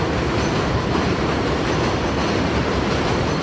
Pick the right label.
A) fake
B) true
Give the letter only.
B